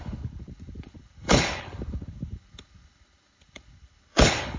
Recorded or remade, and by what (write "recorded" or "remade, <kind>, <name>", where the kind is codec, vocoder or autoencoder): remade, codec, HILCodec